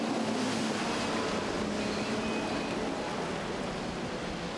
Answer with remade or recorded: recorded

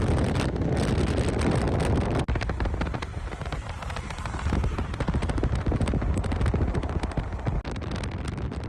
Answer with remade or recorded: recorded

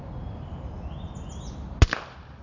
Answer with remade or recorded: recorded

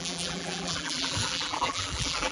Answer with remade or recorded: remade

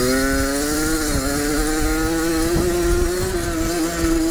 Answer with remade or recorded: recorded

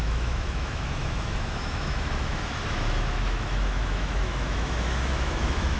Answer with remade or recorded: remade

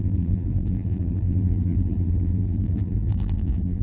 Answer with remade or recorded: remade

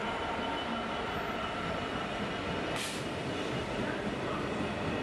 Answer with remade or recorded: recorded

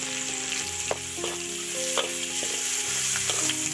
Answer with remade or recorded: recorded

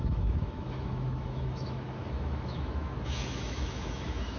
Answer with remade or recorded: remade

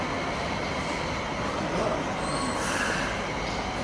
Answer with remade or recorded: recorded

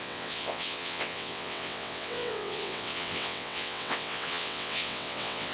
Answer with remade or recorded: remade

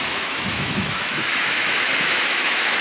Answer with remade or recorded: remade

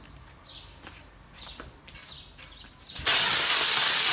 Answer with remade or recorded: recorded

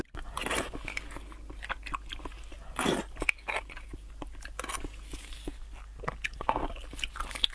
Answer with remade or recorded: recorded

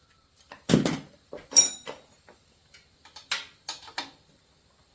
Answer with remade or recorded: recorded